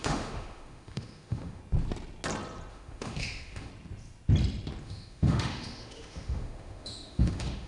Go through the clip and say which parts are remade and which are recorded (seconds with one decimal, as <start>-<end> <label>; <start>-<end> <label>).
0.0-1.6 remade; 1.6-2.7 recorded; 2.7-3.7 remade; 3.7-4.8 recorded; 4.8-7.7 remade